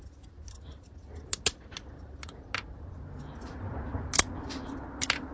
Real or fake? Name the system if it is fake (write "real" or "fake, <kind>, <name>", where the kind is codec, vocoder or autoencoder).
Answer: real